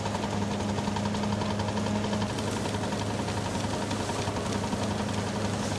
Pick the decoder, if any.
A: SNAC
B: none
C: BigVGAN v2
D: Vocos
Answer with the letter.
B